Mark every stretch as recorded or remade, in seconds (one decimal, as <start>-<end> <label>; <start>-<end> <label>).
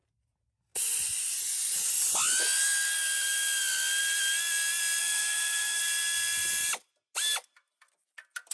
0.0-5.0 recorded; 5.0-5.8 remade; 5.8-8.5 recorded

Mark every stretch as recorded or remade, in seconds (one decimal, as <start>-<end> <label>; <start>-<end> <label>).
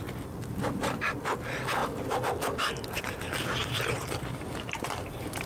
0.0-1.8 recorded; 1.8-3.0 remade; 3.0-3.6 recorded; 3.6-5.5 remade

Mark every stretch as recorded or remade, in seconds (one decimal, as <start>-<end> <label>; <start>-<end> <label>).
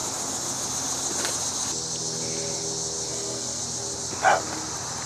0.0-3.1 recorded; 3.1-3.6 remade; 3.6-5.1 recorded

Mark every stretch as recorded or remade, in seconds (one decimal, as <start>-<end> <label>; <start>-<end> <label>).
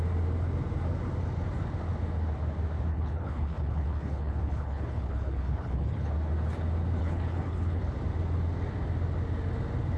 0.0-2.9 recorded; 2.9-6.1 remade; 6.1-7.0 recorded; 7.0-7.8 remade; 7.8-10.0 recorded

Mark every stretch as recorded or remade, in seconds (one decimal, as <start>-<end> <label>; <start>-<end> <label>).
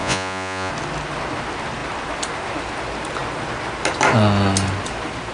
0.0-0.7 remade; 0.7-5.3 recorded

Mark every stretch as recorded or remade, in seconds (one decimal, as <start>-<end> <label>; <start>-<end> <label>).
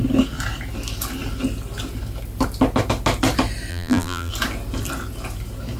0.0-3.7 recorded; 3.7-4.3 remade; 4.3-5.8 recorded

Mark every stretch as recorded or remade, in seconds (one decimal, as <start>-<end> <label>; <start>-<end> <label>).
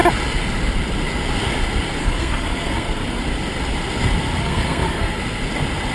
0.0-2.0 recorded; 2.0-3.2 remade; 3.2-4.4 recorded; 4.4-5.2 remade; 5.2-5.9 recorded